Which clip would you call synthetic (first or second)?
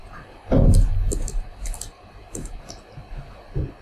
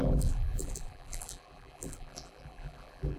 second